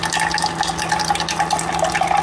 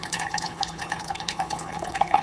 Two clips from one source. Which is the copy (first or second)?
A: second